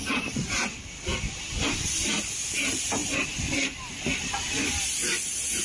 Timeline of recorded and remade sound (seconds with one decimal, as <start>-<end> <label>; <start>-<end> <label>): 0.0-5.6 recorded